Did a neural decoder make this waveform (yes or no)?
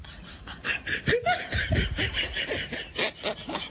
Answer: no